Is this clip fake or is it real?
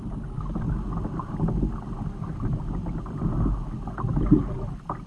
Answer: real